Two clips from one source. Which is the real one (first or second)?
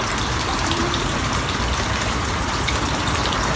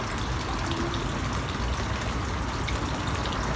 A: second